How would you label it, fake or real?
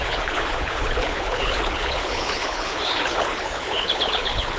fake